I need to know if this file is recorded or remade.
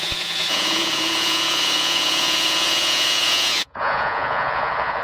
remade